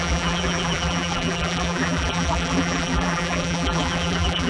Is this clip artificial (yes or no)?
yes